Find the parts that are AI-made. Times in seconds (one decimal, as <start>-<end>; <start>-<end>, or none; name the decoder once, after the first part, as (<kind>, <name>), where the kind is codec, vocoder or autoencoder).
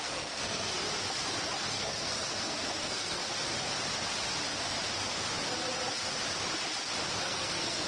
0.0-0.7 (codec, SNAC); 1.7-3.2; 7.2-7.9